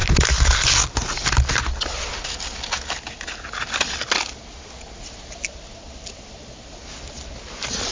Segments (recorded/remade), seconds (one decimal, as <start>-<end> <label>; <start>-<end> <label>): 0.0-7.9 recorded